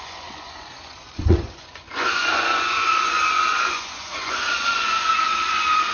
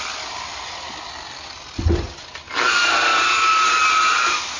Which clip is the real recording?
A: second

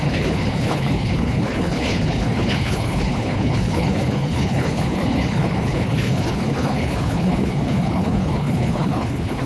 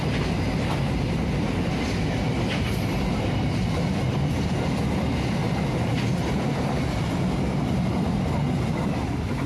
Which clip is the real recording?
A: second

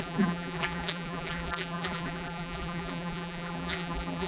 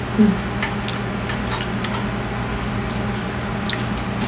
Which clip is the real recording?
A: second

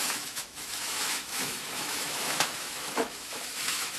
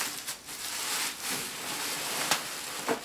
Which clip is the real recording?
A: second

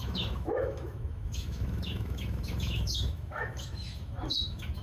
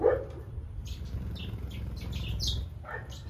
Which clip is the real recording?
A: second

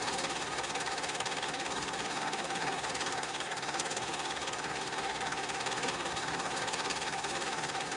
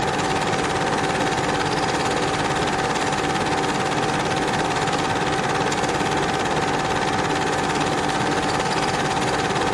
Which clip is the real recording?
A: second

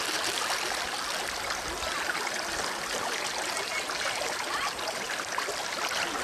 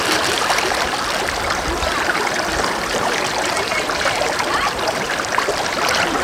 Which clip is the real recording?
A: first